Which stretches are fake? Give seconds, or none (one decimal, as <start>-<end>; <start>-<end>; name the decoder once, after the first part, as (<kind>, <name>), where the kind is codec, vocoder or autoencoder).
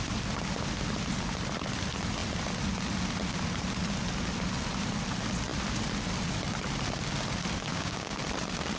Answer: 7.7-8.2 (codec, DAC)